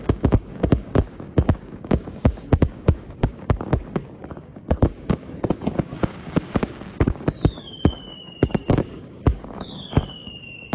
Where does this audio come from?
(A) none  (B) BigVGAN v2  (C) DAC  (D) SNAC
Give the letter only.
C